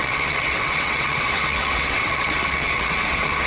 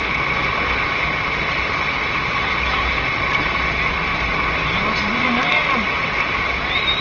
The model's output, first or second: first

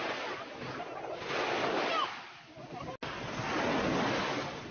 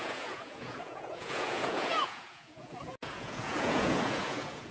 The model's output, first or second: second